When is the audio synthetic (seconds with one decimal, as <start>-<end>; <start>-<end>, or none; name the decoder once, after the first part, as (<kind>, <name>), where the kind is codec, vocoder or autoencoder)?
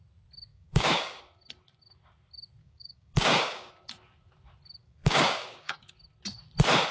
0.5-1.2 (codec, DAC); 2.6-3.7; 4.8-5.9